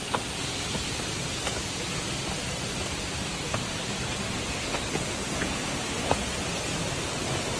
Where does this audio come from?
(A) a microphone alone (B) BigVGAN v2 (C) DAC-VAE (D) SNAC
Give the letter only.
A